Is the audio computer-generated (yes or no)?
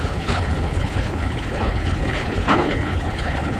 yes